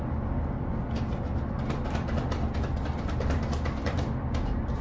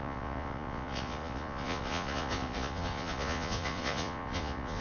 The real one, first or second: first